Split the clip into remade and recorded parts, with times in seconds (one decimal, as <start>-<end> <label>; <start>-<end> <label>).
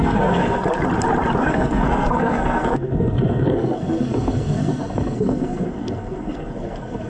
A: 0.0-0.6 remade; 0.6-1.4 recorded; 1.4-7.1 remade